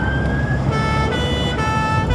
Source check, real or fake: fake